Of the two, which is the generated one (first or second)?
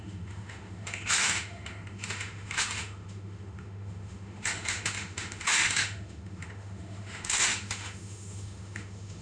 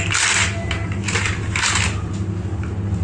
first